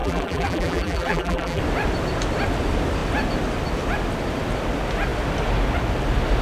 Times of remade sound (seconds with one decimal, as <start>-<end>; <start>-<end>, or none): 0.0-1.6

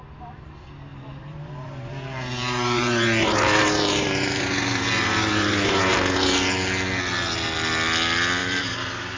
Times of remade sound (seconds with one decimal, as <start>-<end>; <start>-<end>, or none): 0.9-5.8; 8.4-9.2